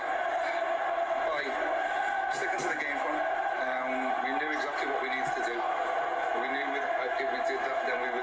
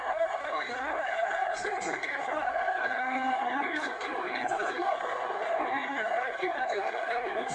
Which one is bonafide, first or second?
first